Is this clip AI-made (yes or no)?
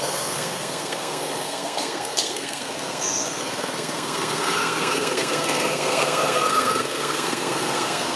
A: yes